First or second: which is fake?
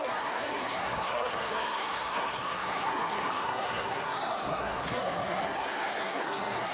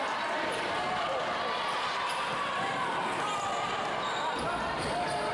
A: first